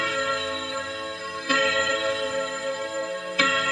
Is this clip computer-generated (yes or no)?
yes